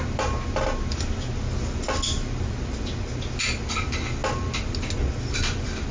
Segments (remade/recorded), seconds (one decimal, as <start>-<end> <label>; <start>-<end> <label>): 0.0-5.9 recorded